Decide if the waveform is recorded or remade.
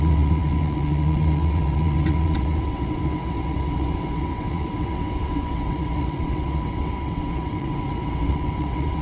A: remade